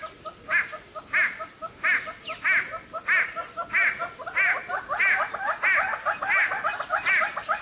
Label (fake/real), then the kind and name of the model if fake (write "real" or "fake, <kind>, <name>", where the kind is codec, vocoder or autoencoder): real